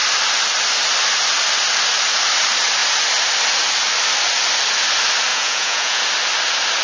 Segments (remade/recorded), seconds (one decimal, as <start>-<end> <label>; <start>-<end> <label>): 0.0-5.3 recorded; 5.3-6.0 remade; 6.0-6.8 recorded